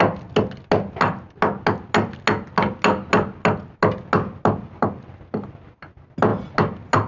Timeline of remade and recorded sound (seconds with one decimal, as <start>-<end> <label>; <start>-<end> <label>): 0.0-7.1 recorded